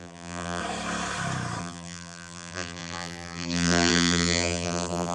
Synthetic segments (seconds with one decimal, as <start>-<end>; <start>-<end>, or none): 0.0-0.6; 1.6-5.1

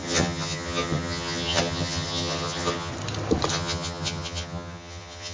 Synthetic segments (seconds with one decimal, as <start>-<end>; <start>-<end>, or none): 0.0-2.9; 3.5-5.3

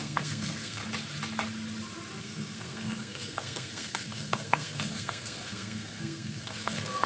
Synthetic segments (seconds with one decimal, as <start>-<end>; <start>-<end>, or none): 0.0-0.8; 2.2-7.1

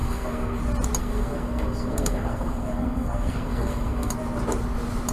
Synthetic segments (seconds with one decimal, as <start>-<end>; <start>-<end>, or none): 0.0-0.6; 1.0-4.1

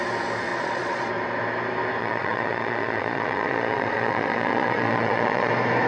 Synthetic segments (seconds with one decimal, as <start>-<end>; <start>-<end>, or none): 0.5-1.1; 2.0-5.5

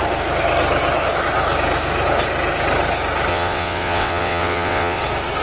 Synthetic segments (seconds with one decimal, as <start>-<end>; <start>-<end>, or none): 3.3-5.0

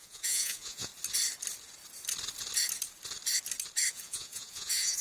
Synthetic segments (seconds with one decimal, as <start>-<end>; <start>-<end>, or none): 0.0-0.9; 3.9-5.0